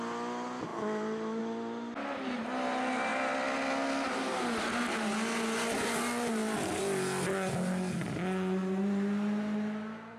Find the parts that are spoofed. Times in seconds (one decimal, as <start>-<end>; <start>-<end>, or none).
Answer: 0.7-1.4